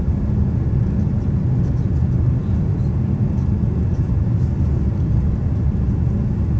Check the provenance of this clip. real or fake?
real